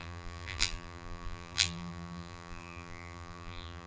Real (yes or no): no